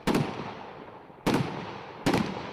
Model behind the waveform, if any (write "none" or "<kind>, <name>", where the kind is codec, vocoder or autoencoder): none